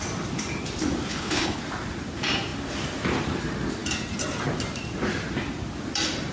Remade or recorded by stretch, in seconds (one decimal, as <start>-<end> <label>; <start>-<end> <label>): 0.0-1.1 recorded; 1.1-1.6 remade; 1.6-6.3 recorded